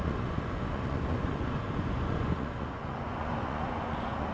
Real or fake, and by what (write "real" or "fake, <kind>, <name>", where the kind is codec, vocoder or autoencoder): fake, vocoder, Vocos